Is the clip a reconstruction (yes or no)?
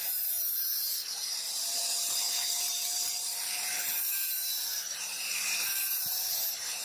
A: yes